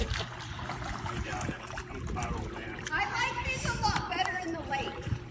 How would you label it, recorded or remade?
remade